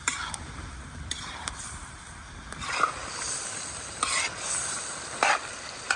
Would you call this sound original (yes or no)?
yes